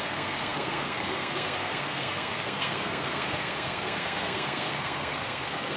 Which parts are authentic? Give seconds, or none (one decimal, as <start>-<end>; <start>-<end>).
none